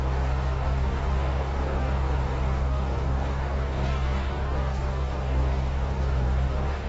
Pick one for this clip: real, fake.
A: fake